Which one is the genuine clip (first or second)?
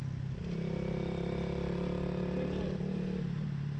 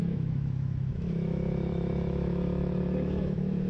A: first